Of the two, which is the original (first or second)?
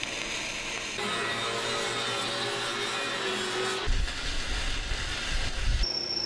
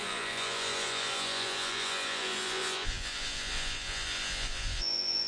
first